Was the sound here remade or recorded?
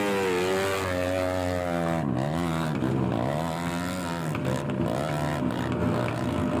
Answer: recorded